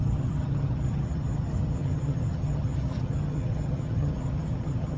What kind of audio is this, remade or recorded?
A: remade